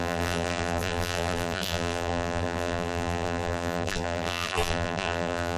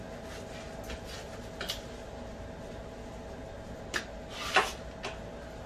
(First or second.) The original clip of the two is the second